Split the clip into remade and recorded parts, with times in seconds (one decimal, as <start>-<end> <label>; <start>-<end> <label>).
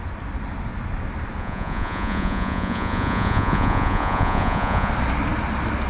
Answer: 0.0-1.4 recorded; 1.4-4.9 remade; 4.9-5.9 recorded